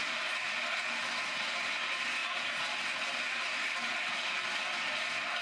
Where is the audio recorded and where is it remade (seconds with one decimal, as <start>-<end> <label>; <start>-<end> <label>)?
0.0-5.4 recorded